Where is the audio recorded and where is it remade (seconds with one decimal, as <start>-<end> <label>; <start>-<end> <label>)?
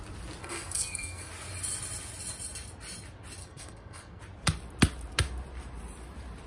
0.0-0.4 recorded; 0.4-1.3 remade; 1.3-3.4 recorded; 3.4-4.2 remade; 4.2-6.5 recorded